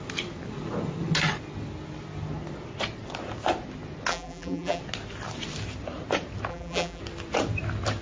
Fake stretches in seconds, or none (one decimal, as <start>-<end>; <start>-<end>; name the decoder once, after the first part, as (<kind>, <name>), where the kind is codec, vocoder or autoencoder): 4.1-4.8 (vocoder, BigVGAN v2); 6.5-7.0